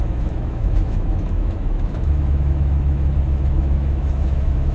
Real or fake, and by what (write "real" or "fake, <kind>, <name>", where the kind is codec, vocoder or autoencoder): fake, autoencoder, DAC-VAE